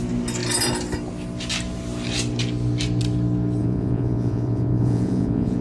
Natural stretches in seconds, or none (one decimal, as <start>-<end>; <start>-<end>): 0.0-3.6